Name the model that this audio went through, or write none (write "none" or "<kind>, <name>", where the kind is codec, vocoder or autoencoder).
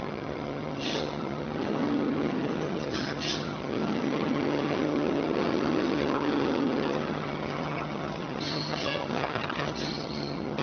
vocoder, HiFi-GAN